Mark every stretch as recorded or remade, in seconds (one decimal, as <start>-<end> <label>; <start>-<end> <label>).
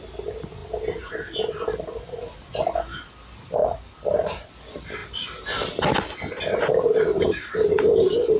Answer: 0.0-5.0 recorded; 5.0-6.0 remade; 6.0-7.1 recorded; 7.1-7.8 remade; 7.8-8.4 recorded